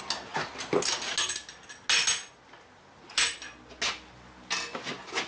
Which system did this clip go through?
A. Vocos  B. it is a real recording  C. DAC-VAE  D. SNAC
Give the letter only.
B